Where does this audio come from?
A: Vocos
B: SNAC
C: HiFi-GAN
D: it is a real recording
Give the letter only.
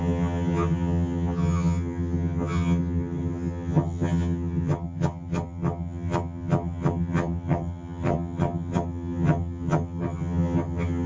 C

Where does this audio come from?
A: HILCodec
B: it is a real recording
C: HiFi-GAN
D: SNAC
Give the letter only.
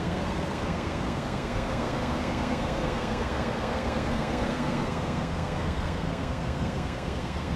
D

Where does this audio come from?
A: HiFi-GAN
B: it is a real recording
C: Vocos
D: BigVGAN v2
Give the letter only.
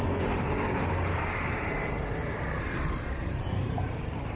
D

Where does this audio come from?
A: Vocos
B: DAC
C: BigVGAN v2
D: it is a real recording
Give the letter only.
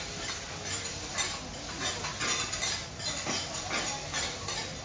D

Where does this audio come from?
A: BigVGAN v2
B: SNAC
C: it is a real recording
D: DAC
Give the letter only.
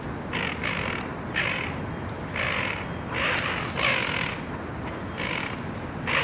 C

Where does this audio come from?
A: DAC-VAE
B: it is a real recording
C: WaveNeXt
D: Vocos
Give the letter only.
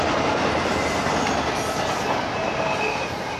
B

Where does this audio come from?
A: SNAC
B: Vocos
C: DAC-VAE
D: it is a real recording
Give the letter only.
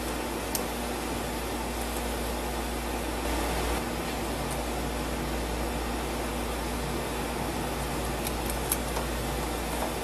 D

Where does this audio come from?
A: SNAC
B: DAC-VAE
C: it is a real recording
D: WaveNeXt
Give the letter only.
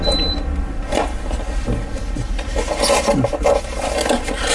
C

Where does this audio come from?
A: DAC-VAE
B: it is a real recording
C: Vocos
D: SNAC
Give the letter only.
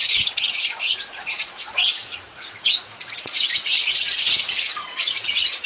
C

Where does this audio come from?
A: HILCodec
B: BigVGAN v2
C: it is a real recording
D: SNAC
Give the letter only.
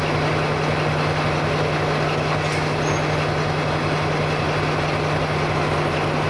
C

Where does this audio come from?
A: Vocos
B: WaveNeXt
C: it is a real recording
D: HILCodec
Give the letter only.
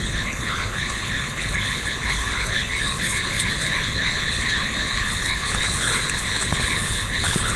D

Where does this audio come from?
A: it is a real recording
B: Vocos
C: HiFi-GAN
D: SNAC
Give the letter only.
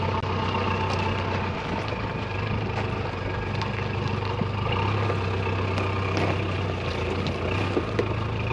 A